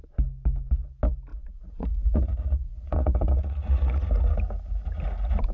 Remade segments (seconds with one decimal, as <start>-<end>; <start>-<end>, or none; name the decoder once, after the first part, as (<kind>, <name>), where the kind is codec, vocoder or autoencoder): 1.3-4.1 (vocoder, Vocos)